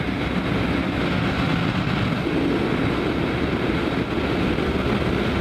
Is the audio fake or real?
real